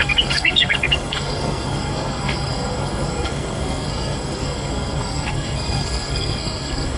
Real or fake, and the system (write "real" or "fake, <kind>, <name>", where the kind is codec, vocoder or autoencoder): fake, codec, SNAC